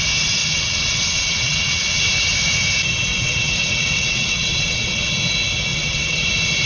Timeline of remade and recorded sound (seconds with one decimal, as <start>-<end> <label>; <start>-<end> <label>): 0.0-0.4 recorded; 0.4-2.0 remade; 2.0-3.1 recorded; 3.1-5.1 remade; 5.1-5.7 recorded; 5.7-6.3 remade; 6.3-6.7 recorded

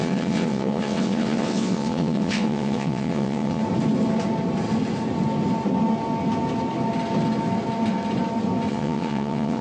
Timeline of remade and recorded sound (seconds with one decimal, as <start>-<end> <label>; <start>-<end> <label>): 0.0-3.6 remade; 3.6-8.7 recorded; 8.7-9.6 remade

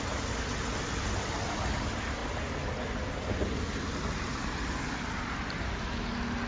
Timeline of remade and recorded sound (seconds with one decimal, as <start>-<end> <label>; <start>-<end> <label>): 0.0-6.5 recorded

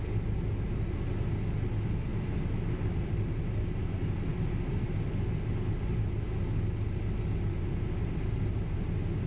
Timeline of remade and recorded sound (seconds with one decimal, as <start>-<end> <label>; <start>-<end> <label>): 0.0-9.3 recorded

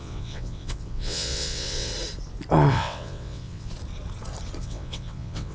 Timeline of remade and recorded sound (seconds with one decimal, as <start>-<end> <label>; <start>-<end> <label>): 0.0-1.9 remade; 1.9-2.7 recorded; 2.7-3.7 remade; 3.7-4.6 recorded; 4.6-5.5 remade

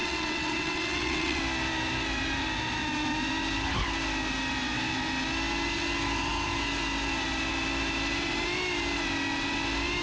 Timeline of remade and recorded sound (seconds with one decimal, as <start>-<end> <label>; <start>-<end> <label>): 0.0-1.4 remade; 1.4-10.0 recorded